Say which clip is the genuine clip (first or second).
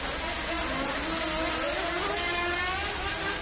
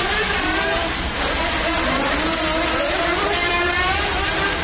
first